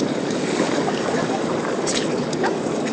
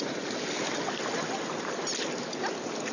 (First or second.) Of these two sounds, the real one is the second